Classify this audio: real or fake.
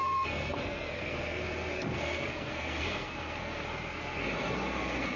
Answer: fake